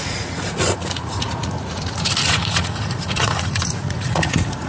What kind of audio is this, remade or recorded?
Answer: remade